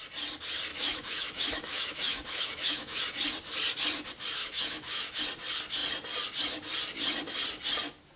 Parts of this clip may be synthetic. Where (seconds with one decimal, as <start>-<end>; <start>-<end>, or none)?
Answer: 0.7-3.0; 4.4-5.2